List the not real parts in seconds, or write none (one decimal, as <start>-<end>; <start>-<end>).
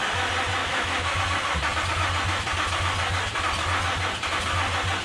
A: 0.6-1.2